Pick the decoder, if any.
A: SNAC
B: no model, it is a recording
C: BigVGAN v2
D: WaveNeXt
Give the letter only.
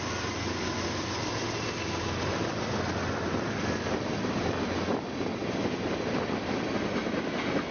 B